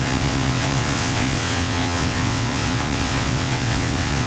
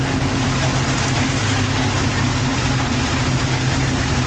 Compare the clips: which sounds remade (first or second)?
first